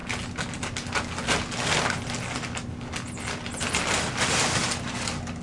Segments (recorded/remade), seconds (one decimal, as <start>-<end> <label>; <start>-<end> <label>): 0.0-5.4 recorded